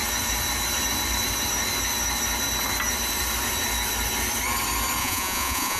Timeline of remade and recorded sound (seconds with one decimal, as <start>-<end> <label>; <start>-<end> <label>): 0.0-5.0 recorded; 5.0-5.8 remade